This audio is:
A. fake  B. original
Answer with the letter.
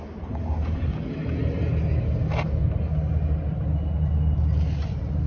B